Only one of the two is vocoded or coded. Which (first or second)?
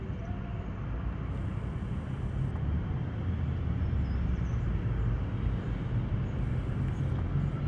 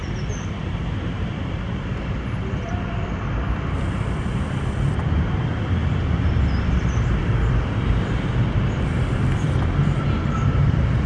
second